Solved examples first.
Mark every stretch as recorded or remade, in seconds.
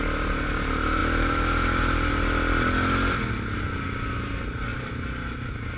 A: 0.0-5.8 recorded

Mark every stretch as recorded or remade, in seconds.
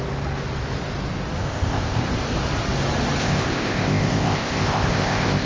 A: 0.0-1.4 recorded; 1.4-2.0 remade; 2.0-3.2 recorded; 3.2-5.5 remade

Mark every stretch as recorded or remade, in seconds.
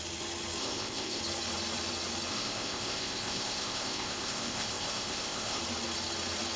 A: 0.0-0.6 recorded; 0.6-1.2 remade; 1.2-2.3 recorded; 2.3-5.6 remade; 5.6-6.6 recorded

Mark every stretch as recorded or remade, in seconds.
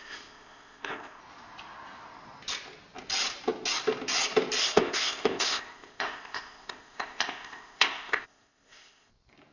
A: 0.0-1.2 remade; 1.2-4.6 recorded; 4.6-9.1 remade; 9.1-9.5 recorded